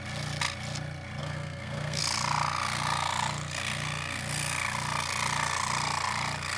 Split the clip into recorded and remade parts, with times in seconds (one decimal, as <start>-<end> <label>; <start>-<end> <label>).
0.0-1.2 recorded; 1.2-2.0 remade; 2.0-6.6 recorded